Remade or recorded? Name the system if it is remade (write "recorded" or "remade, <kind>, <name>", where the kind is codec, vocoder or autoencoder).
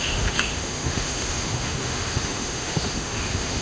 remade, autoencoder, DAC-VAE